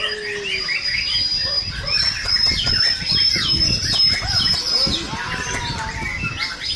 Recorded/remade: recorded